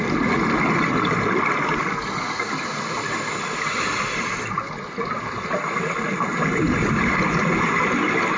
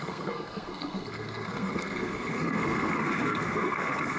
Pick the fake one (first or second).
second